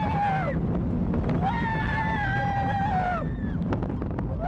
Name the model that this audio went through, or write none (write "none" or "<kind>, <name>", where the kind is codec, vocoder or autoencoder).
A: none